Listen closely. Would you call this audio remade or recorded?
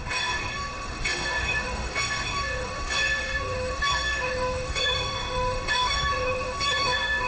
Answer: remade